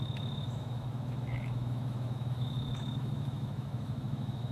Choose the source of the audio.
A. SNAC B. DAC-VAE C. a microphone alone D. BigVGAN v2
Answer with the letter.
B